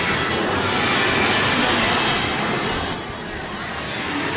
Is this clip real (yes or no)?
yes